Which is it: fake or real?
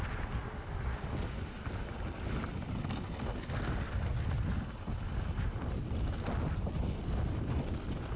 real